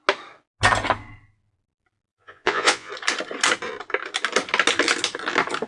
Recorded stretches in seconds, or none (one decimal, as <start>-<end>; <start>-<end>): 0.0-2.1; 2.9-5.7